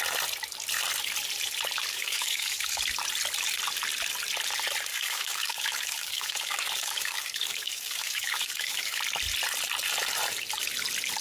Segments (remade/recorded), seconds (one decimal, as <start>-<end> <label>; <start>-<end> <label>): 0.0-1.9 recorded; 1.9-2.8 remade; 2.8-4.9 recorded; 4.9-9.0 remade; 9.0-11.2 recorded